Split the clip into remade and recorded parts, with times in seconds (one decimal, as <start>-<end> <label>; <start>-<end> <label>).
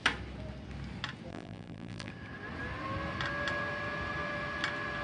0.0-1.3 recorded; 1.3-2.1 remade; 2.1-5.0 recorded